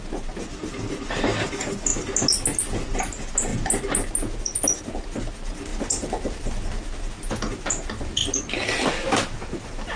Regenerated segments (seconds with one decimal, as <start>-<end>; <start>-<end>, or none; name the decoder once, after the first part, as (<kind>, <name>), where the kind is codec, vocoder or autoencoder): none